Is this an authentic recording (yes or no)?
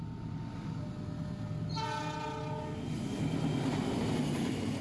yes